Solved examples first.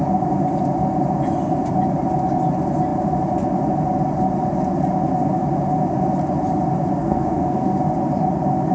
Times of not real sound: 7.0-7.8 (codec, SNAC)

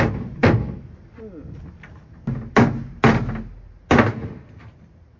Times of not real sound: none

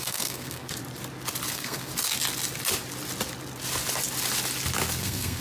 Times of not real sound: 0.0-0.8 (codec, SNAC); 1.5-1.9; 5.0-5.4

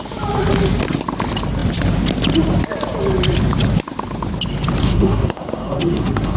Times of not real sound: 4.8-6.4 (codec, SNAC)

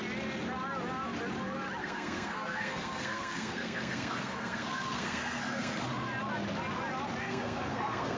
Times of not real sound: 1.8-5.8 (codec, SNAC); 7.2-8.2

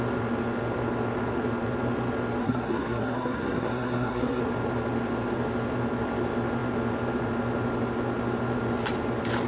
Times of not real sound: 2.4-4.4 (codec, SNAC)